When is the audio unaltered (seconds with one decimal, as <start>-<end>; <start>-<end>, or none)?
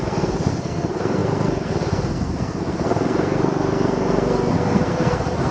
none